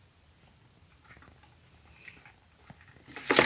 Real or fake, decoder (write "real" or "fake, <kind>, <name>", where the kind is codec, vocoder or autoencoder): real